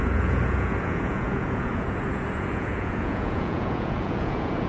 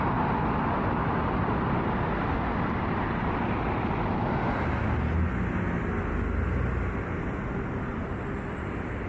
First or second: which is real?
second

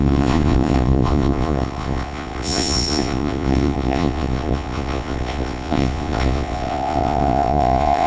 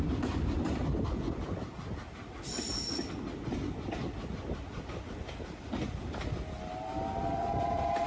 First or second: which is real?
second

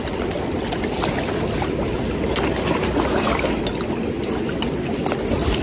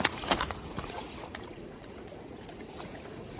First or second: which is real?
first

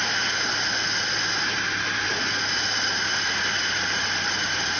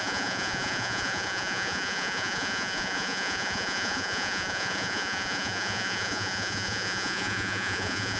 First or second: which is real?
first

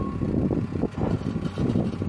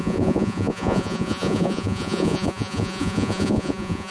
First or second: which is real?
first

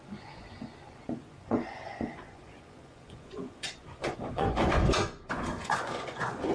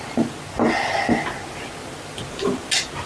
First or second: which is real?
second